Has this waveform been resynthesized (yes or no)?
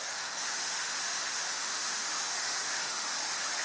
yes